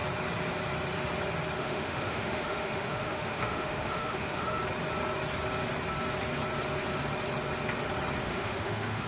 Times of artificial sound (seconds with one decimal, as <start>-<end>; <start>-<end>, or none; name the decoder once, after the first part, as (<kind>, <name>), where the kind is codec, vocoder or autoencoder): 1.6-4.6 (autoencoder, DAC-VAE); 8.2-9.1